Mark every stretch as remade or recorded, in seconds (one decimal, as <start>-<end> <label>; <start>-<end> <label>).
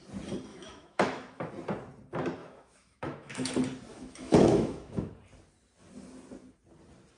0.0-0.5 recorded; 0.5-1.5 remade; 1.5-2.4 recorded; 2.4-3.5 remade; 3.5-3.9 recorded; 3.9-5.1 remade; 5.1-7.2 recorded